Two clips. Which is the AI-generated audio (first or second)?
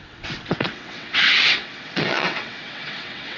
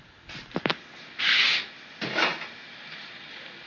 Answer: first